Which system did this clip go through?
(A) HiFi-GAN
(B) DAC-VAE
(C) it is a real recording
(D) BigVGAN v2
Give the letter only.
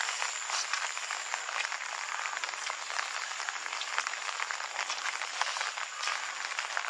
C